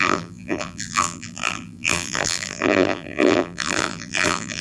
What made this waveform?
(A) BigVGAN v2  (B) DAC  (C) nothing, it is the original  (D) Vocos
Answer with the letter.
A